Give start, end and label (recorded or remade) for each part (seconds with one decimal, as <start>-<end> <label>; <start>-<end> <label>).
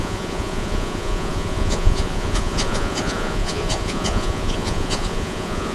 0.0-5.7 remade